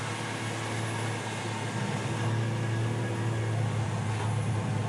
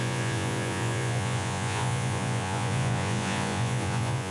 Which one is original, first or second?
first